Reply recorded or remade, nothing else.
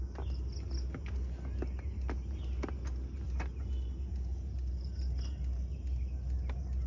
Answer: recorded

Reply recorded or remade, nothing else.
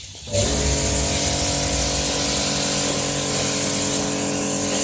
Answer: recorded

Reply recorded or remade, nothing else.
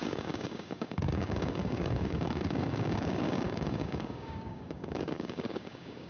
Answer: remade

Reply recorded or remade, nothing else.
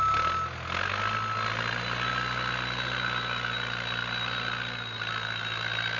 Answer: recorded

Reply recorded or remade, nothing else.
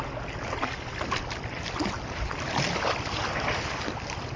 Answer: recorded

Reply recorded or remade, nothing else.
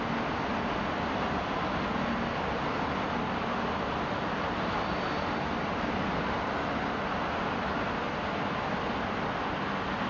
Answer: recorded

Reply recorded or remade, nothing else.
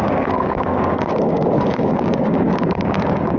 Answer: remade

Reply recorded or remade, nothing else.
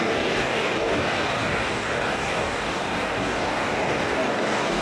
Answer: remade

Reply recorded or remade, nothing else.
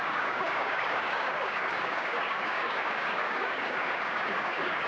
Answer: remade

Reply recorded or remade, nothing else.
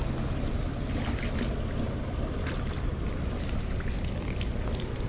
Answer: recorded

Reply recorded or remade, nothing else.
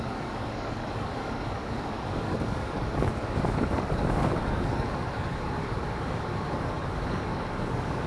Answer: remade